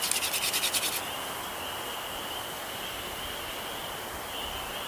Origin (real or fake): real